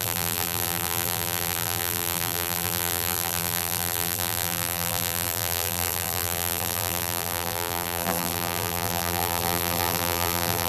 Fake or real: fake